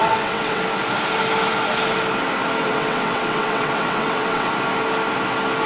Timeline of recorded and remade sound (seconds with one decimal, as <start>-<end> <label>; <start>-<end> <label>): 0.0-0.6 remade; 0.6-2.6 recorded; 2.6-4.5 remade; 4.5-5.7 recorded